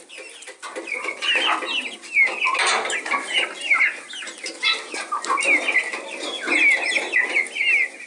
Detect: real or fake real